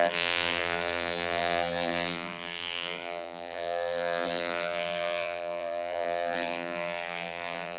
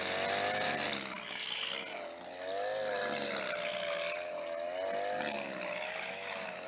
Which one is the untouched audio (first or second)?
second